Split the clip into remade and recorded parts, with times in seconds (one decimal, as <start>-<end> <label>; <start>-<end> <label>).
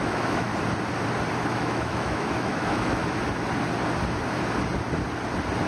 0.0-0.5 remade; 0.5-1.4 recorded; 1.4-3.0 remade; 3.0-5.7 recorded